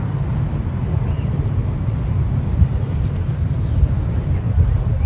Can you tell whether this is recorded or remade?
remade